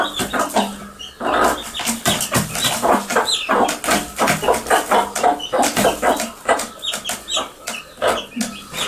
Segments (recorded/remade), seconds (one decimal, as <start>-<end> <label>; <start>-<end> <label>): 0.0-8.9 recorded